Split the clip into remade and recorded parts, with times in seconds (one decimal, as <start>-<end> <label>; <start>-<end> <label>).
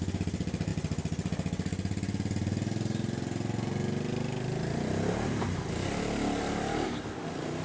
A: 0.0-7.6 recorded